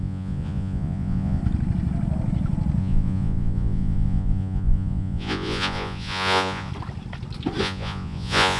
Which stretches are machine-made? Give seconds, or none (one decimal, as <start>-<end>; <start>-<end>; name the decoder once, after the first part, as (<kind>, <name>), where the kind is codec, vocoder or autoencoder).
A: 0.0-1.4 (vocoder, Vocos); 2.8-6.7; 7.6-8.6